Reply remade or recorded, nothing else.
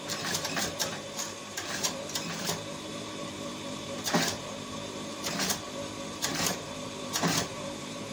remade